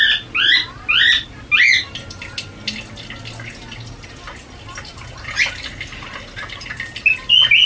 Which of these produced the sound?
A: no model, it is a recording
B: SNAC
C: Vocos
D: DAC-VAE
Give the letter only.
A